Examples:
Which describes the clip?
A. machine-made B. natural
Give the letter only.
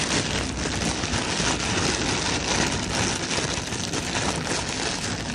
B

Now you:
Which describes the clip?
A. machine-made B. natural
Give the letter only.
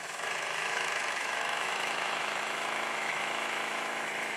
A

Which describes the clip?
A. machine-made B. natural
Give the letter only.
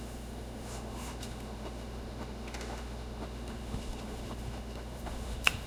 A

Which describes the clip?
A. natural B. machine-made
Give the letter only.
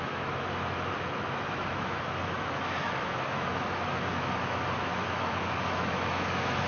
B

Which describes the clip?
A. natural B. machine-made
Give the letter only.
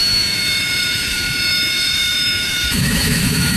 B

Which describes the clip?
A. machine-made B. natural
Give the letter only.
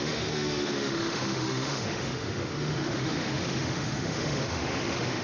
A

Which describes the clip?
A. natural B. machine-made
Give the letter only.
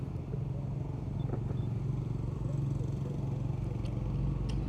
A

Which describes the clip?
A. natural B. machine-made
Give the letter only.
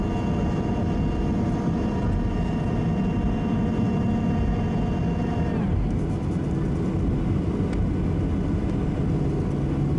A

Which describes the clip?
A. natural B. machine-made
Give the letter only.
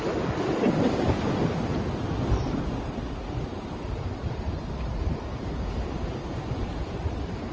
A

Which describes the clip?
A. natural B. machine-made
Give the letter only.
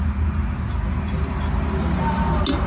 A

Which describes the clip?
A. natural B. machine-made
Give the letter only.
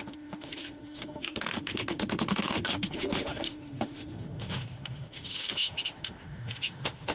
B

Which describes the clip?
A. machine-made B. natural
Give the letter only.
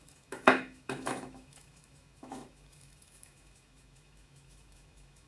A